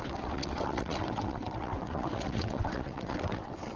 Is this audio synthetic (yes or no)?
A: yes